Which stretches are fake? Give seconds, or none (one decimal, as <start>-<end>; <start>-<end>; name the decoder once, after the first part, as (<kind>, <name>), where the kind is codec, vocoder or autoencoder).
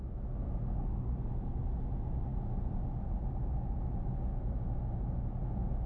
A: none